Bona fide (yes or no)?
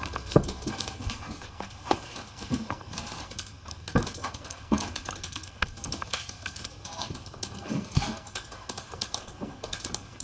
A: no